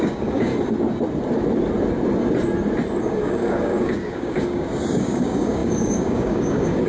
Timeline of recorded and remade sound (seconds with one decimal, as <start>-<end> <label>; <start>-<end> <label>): 0.0-0.5 remade; 0.5-3.0 recorded; 3.0-6.9 remade